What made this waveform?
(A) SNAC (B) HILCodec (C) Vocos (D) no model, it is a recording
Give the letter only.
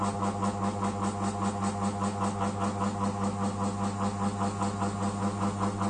D